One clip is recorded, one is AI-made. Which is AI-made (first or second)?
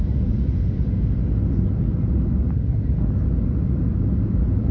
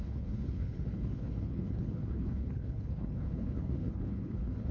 second